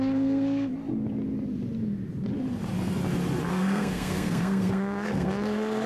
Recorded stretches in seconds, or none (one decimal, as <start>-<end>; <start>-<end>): 0.7-3.5